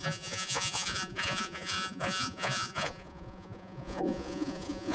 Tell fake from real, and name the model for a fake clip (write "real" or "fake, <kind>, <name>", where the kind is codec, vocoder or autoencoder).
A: fake, vocoder, Vocos